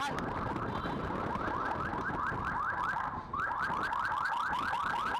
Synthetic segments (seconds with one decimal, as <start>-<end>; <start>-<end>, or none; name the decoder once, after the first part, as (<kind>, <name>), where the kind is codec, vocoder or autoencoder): none